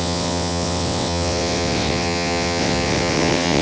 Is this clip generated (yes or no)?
yes